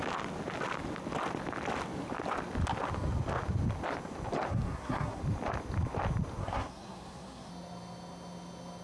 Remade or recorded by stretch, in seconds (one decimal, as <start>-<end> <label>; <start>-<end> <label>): 0.0-4.5 recorded; 4.5-5.2 remade; 5.2-6.4 recorded; 6.4-7.5 remade; 7.5-8.8 recorded